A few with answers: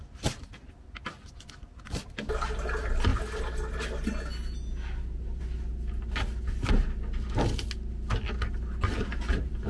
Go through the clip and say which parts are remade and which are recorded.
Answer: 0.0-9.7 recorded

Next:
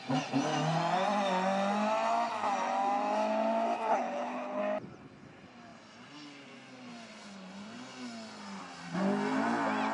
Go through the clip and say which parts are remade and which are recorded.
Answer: 0.0-3.9 recorded; 3.9-4.6 remade; 4.6-9.9 recorded

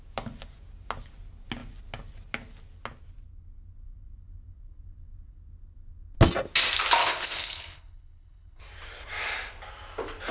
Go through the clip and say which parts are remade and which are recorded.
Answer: 0.0-7.0 recorded; 7.0-8.6 remade; 8.6-10.3 recorded

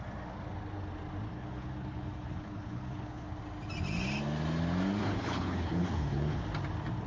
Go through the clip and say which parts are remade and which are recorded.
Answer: 0.0-1.3 recorded; 1.3-3.4 remade; 3.4-5.0 recorded; 5.0-6.4 remade; 6.4-7.1 recorded

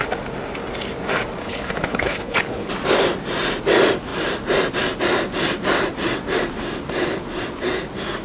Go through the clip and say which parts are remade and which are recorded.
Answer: 0.0-1.4 recorded; 1.4-2.7 remade; 2.7-8.2 recorded

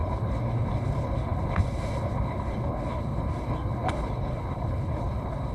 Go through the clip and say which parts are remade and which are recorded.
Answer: 0.0-5.5 remade

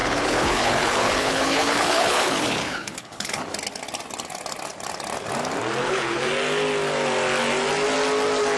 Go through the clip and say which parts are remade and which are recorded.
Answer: 0.0-3.4 remade; 3.4-5.8 recorded; 5.8-6.3 remade; 6.3-8.6 recorded